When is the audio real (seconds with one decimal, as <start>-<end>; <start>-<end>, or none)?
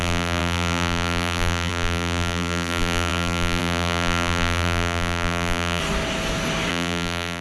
5.8-6.7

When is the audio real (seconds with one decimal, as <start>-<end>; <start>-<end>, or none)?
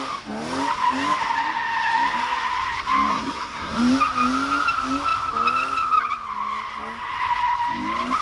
0.0-3.1; 3.8-8.2